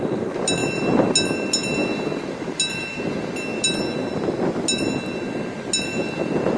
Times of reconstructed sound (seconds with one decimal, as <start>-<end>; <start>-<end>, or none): none